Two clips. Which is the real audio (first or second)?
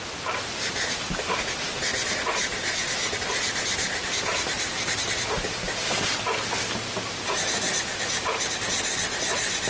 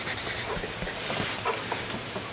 first